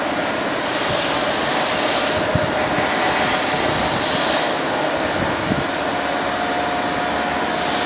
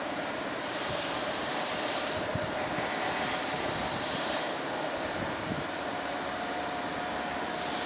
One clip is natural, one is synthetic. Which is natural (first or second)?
first